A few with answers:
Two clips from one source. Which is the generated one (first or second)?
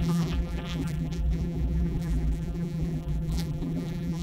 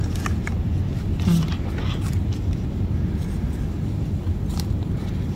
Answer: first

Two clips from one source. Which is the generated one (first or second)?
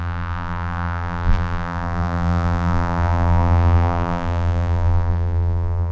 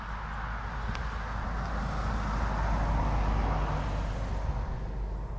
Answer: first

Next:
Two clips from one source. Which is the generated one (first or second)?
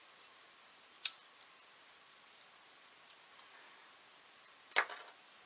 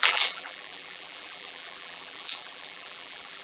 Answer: second